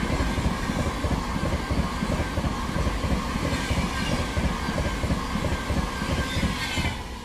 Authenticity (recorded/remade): recorded